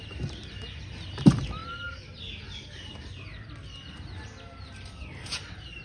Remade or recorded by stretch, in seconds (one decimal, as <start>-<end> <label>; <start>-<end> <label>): 0.0-5.8 recorded

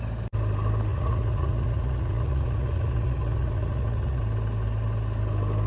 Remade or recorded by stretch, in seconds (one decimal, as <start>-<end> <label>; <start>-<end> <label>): 0.0-0.9 recorded; 0.9-4.2 remade; 4.2-5.7 recorded

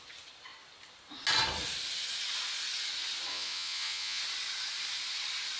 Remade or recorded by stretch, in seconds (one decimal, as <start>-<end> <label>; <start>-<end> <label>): 0.0-3.3 recorded; 3.3-4.2 remade; 4.2-5.6 recorded

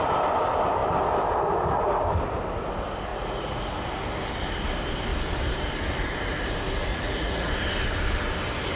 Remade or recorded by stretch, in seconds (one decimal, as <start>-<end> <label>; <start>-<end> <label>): 0.0-3.1 recorded; 3.1-3.6 remade; 3.6-6.9 recorded; 6.9-7.5 remade; 7.5-8.8 recorded

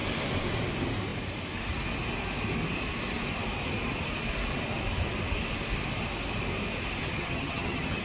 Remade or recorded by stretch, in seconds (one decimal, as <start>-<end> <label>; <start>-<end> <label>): 0.0-7.0 recorded; 7.0-8.0 remade